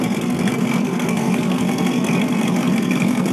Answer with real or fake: fake